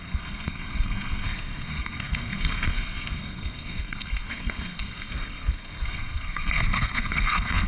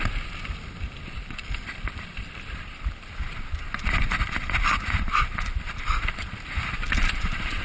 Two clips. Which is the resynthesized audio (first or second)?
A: first